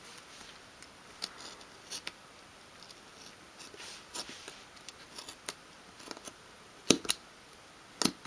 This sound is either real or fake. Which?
real